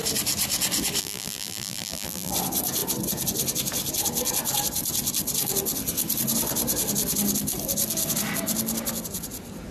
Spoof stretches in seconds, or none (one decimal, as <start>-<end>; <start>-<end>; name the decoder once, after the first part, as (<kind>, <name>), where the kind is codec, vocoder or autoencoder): 1.0-2.3 (vocoder, BigVGAN v2)